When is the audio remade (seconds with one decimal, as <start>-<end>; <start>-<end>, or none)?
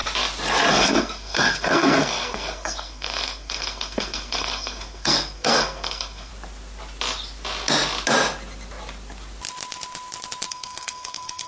0.7-6.3; 10.5-11.5